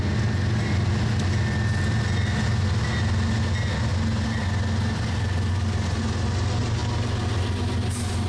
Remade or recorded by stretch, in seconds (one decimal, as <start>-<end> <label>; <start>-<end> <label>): 0.0-8.3 recorded